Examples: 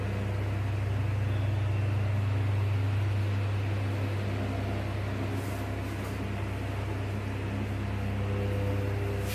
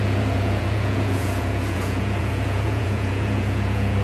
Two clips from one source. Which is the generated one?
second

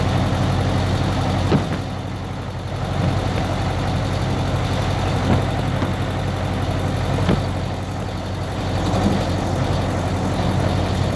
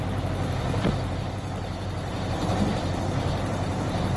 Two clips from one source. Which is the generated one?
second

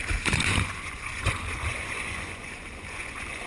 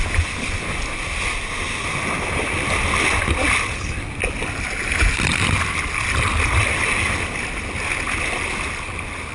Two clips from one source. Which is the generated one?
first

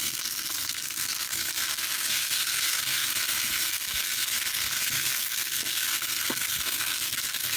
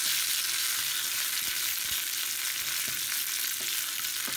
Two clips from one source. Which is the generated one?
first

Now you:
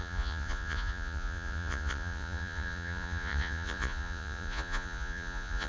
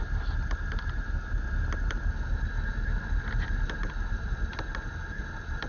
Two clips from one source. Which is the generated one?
first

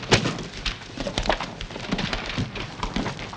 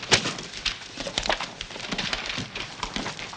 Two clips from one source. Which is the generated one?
second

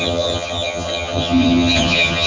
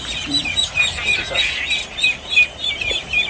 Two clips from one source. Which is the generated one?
first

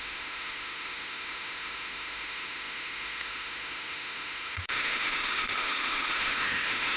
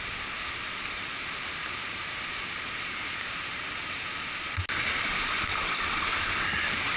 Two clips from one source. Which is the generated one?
first